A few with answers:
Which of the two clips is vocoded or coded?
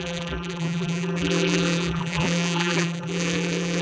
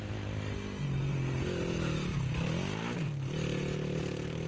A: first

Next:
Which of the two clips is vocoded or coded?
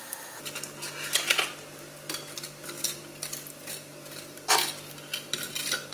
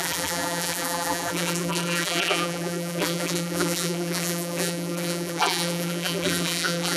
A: second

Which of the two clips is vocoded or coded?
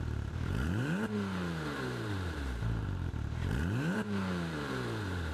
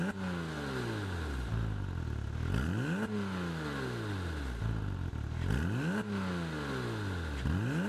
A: first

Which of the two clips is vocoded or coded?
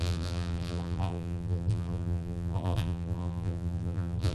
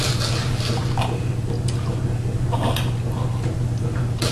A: first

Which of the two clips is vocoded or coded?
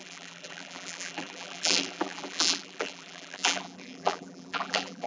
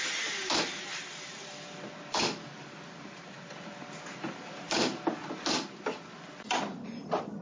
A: first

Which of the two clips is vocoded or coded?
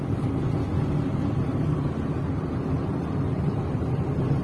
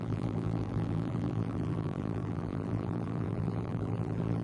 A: second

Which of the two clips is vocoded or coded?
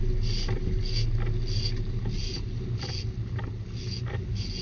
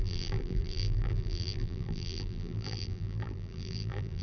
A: second